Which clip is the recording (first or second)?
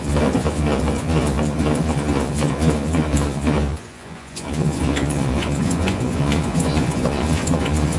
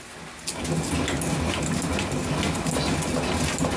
second